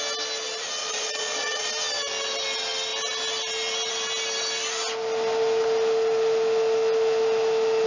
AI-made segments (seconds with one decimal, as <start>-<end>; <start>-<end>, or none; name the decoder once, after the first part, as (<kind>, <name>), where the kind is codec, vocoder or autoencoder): 0.8-1.7 (vocoder, Vocos)